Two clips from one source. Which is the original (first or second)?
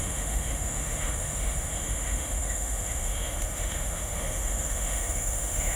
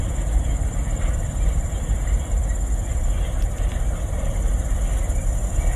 second